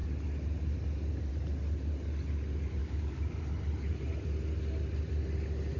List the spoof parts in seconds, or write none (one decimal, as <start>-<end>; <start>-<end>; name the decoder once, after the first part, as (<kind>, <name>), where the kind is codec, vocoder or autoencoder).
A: 2.8-3.4 (codec, DAC)